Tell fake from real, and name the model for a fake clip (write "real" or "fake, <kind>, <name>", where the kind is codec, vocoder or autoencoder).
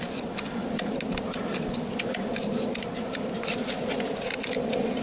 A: real